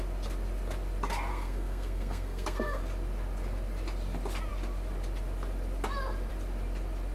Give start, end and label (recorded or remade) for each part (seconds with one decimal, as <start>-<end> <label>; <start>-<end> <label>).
0.0-1.3 recorded; 1.3-2.8 remade; 2.8-7.1 recorded

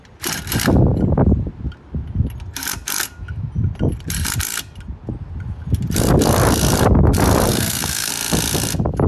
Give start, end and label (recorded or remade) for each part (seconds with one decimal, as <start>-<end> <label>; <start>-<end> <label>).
0.0-7.5 recorded; 7.5-8.1 remade; 8.1-9.1 recorded